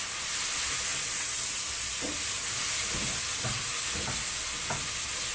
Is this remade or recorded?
recorded